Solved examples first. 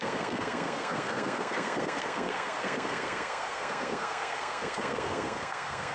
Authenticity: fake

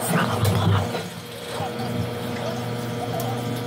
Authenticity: real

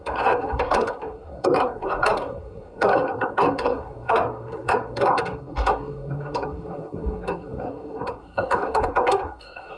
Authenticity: fake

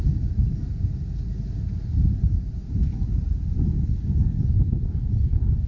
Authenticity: real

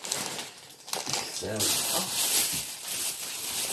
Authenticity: real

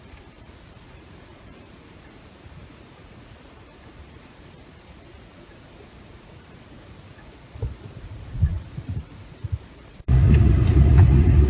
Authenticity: fake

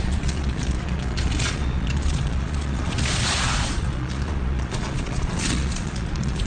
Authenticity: fake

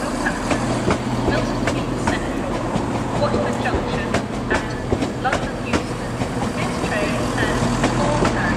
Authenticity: real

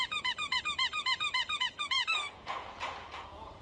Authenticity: fake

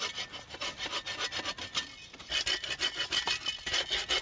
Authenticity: real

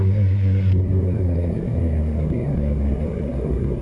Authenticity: fake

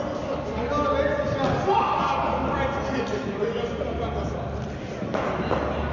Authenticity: real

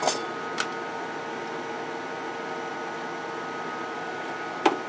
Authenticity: real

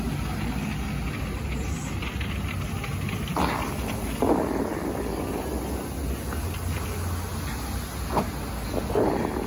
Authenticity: real